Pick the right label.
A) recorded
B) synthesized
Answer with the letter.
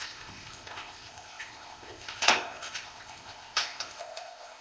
B